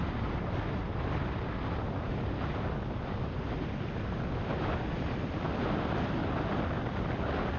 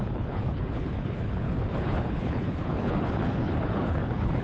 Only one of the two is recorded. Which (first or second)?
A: first